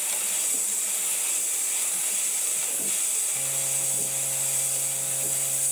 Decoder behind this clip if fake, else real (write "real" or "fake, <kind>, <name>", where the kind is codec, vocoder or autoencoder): real